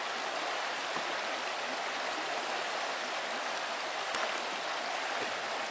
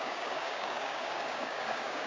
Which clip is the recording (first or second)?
first